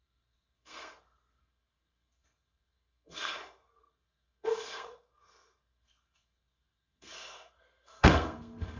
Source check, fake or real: fake